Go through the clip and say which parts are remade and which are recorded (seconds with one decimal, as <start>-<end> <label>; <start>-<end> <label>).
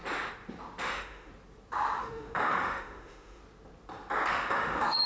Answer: 0.0-0.9 recorded; 0.9-1.3 remade; 1.3-2.0 recorded; 2.0-3.4 remade; 3.4-4.3 recorded; 4.3-5.1 remade